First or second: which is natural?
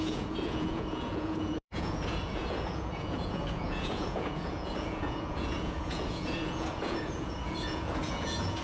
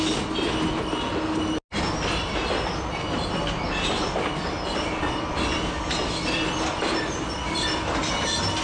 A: second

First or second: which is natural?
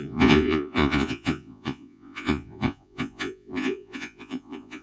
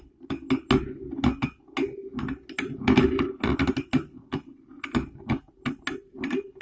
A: second